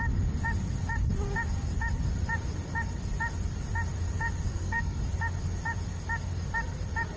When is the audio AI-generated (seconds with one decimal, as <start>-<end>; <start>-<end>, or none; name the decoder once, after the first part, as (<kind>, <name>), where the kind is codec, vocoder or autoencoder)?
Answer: 4.5-5.0 (codec, SNAC)